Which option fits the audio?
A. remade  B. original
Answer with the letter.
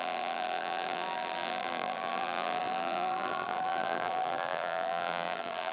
A